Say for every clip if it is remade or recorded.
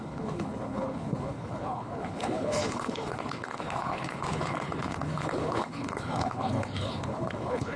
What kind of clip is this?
remade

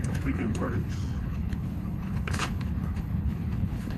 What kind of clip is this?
remade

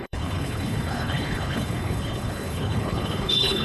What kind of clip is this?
remade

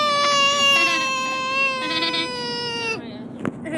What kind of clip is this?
recorded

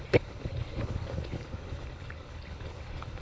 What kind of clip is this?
remade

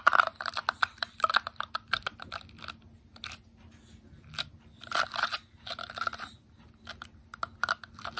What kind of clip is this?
recorded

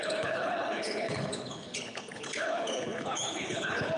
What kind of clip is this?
remade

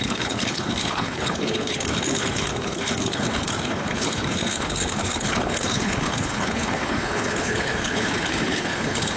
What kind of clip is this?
remade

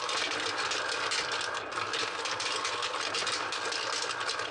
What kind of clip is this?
recorded